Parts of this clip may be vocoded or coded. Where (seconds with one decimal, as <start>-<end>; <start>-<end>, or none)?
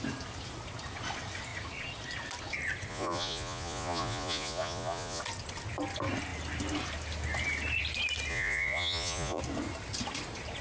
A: 2.9-5.2; 8.3-9.4